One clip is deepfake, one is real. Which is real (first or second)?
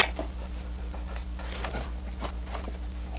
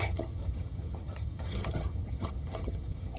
first